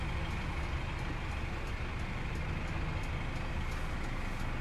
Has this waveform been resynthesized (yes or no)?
no